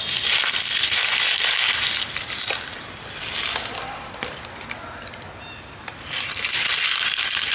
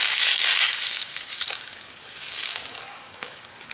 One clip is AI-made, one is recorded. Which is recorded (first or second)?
first